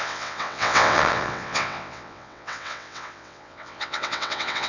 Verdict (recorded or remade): remade